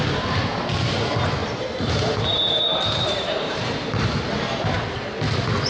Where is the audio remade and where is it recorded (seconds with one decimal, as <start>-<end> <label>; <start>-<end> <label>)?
0.0-1.4 recorded; 1.4-4.8 remade; 4.8-5.7 recorded